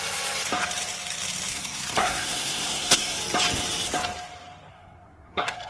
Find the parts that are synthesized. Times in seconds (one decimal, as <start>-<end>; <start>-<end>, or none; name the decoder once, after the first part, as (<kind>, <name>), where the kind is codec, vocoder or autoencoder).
1.5-3.2 (codec, SNAC); 4.7-5.7